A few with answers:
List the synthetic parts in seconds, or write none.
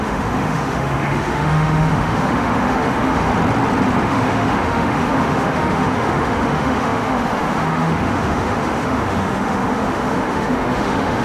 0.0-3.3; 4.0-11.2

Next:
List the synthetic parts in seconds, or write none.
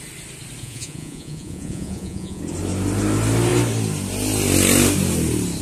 0.6-2.4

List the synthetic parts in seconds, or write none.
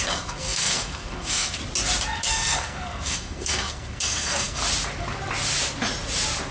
0.0-1.6; 2.2-4.6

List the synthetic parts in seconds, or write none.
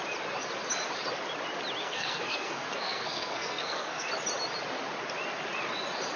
1.8-4.1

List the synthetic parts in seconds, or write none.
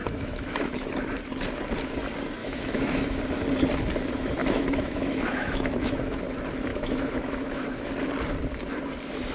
0.0-0.9; 2.4-3.2; 4.4-6.2; 6.7-7.9